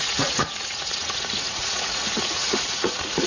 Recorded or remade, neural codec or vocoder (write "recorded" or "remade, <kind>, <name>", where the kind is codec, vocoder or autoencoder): remade, vocoder, Vocos